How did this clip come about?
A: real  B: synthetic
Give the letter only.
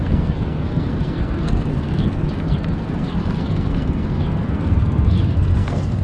B